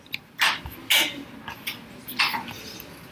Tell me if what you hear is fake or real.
real